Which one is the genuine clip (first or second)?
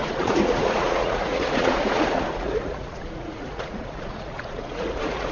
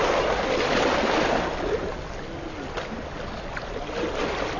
second